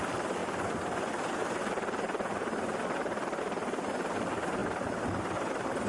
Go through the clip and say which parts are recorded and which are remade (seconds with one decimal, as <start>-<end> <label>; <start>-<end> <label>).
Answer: 0.0-4.6 recorded; 4.6-5.5 remade; 5.5-5.9 recorded